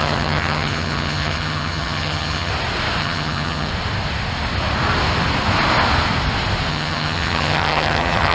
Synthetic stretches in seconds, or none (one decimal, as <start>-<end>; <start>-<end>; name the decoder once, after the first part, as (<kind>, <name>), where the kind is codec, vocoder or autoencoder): 0.0-2.5 (vocoder, HiFi-GAN); 3.0-3.7; 6.7-8.3